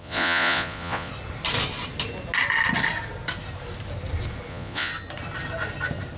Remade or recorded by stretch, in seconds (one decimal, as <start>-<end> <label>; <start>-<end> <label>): 0.0-1.1 remade; 1.1-4.5 recorded; 4.5-4.9 remade; 4.9-6.2 recorded